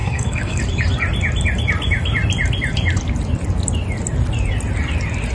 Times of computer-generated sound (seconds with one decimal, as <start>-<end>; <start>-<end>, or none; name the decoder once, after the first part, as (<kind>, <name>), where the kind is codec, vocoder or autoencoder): 0.0-0.6 (codec, SNAC)